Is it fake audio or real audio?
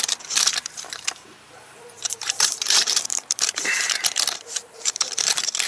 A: fake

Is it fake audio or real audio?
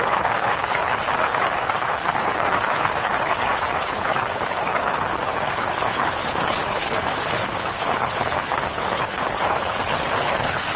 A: fake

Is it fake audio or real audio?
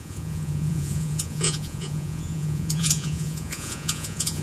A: fake